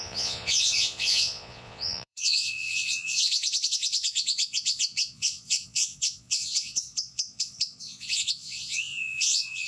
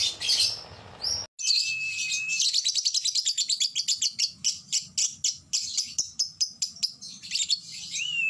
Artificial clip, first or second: first